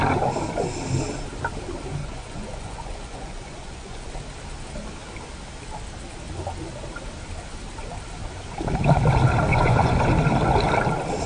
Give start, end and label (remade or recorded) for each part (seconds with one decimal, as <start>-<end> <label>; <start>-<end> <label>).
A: 0.0-2.0 recorded; 2.0-4.1 remade; 4.1-9.5 recorded; 9.5-10.1 remade; 10.1-11.3 recorded